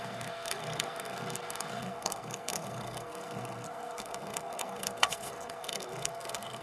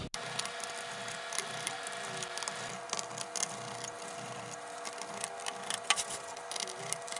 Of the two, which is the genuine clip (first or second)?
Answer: second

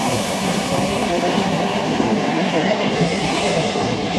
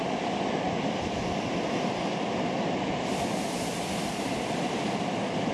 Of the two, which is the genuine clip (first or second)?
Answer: second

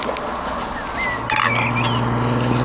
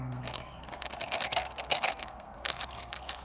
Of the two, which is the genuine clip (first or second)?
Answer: first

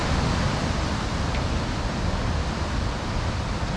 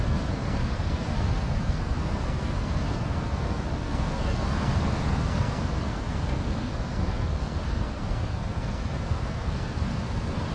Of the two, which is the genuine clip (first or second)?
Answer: first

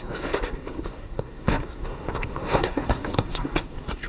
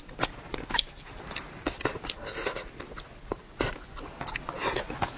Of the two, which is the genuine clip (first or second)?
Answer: second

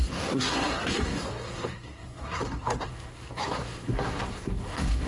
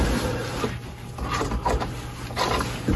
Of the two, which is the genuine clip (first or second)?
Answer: second